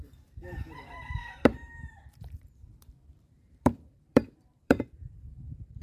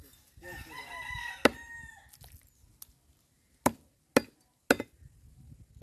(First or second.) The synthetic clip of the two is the first